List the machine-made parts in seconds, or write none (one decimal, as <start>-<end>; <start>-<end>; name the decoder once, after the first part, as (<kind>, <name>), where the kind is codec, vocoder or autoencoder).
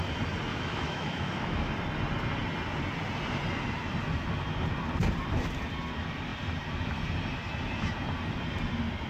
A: 0.5-1.7 (autoencoder, DAC-VAE)